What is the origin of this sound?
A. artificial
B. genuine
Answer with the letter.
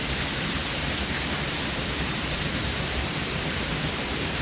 A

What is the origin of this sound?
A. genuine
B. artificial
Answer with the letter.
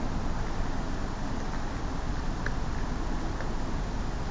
A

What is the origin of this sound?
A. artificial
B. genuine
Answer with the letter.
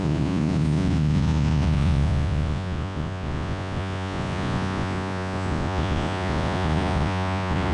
A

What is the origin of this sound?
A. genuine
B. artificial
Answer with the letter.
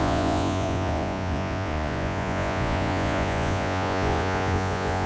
B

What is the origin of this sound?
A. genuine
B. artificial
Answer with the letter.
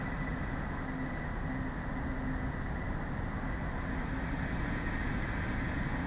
A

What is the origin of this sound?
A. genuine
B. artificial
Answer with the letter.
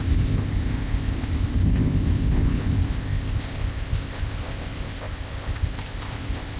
B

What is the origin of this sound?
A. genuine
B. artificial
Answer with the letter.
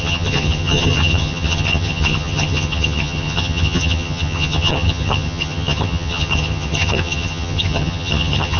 B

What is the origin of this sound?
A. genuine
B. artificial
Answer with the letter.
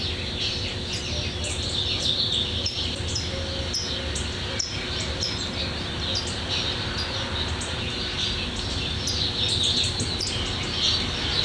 A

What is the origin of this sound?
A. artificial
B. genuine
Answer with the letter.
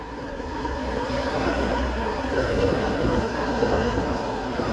A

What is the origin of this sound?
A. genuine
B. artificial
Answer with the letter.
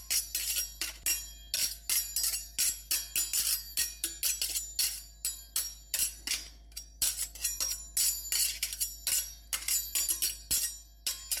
A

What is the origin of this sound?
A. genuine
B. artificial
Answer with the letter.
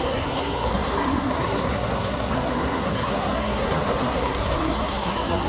B